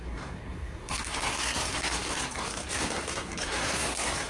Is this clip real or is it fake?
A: fake